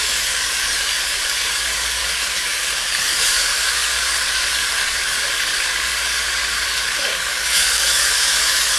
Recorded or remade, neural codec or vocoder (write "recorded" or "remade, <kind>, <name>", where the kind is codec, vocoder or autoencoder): remade, codec, DAC